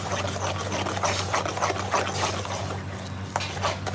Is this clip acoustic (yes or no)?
yes